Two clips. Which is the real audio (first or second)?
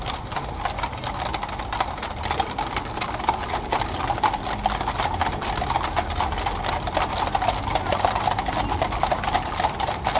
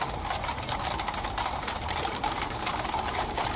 first